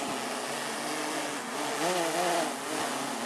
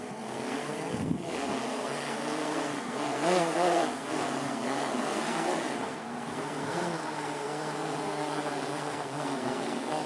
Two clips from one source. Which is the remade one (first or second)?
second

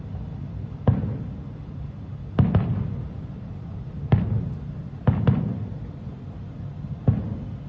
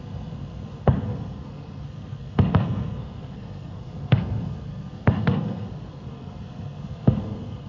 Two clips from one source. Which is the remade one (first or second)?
second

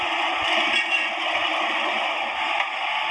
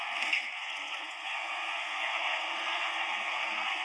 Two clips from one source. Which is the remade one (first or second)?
second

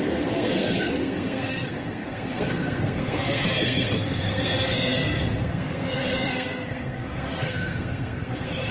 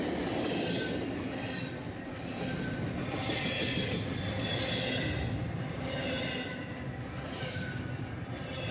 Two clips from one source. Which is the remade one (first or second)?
first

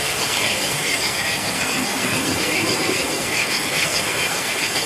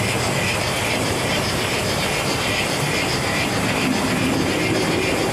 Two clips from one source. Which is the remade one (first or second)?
first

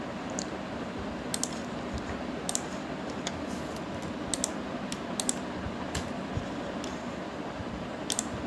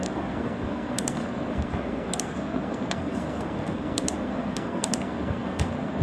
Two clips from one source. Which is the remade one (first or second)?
second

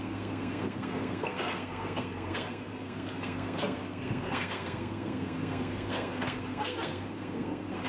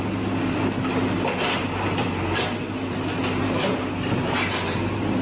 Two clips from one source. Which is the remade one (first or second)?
first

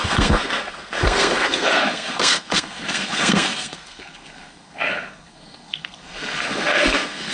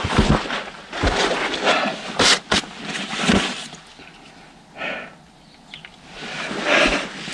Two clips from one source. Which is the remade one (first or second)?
first